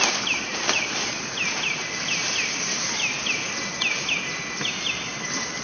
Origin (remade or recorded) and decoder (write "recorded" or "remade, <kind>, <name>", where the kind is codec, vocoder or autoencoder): recorded